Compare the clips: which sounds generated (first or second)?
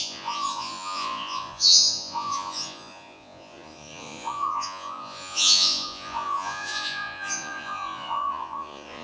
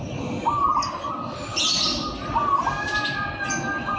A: first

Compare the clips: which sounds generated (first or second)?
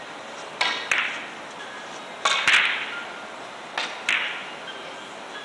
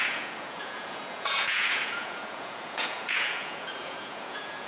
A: second